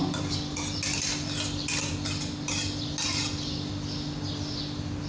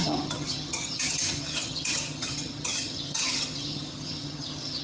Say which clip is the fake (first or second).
second